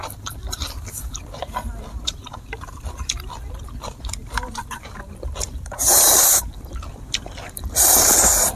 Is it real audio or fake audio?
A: fake